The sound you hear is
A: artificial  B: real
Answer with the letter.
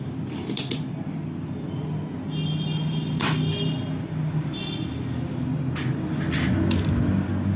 B